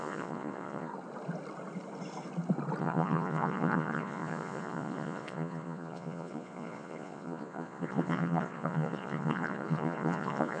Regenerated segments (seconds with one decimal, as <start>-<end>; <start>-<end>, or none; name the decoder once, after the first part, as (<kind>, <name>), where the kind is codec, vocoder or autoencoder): 0.0-0.9 (vocoder, Vocos); 2.8-10.6